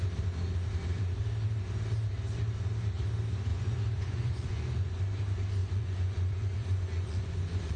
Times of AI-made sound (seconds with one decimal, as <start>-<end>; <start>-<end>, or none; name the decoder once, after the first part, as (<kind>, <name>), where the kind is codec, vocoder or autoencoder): 3.5-5.0 (vocoder, Vocos); 5.6-7.8

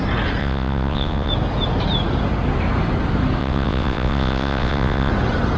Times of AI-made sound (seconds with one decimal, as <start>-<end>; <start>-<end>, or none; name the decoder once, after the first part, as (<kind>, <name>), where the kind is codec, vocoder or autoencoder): 0.4-1.3 (vocoder, WaveNeXt); 3.4-5.1